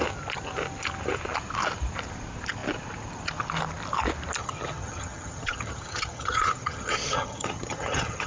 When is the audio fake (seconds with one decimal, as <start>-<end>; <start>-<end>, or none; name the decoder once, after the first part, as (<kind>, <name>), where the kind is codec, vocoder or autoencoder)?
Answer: 4.4-8.3 (vocoder, HiFi-GAN)